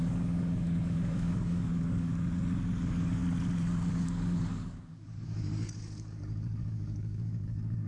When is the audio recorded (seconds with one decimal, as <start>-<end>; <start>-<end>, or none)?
2.1-2.8; 3.2-3.9